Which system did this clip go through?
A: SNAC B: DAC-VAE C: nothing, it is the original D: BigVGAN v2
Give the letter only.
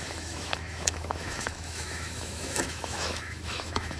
B